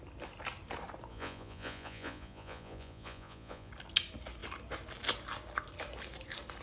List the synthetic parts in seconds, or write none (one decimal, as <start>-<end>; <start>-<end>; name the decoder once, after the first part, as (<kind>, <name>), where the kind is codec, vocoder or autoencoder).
1.1-3.7 (vocoder, Vocos)